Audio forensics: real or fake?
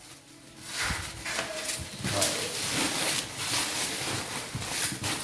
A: real